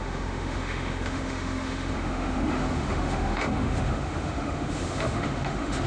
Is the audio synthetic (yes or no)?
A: yes